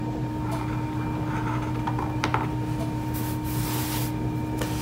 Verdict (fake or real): real